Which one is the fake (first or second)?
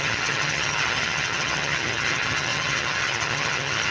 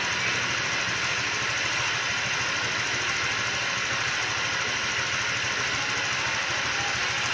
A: first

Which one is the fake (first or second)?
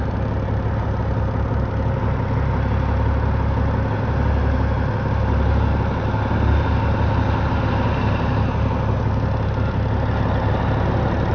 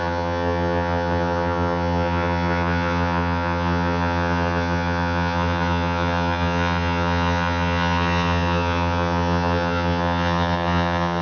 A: second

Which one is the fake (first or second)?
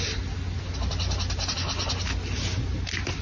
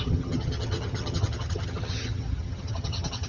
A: second